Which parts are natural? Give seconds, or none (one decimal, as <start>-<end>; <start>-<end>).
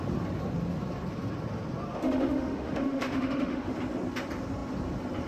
0.0-2.0; 3.7-5.3